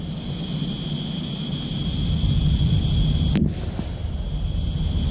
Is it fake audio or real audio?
real